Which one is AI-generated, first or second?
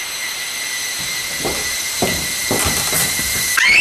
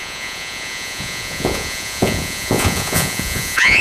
second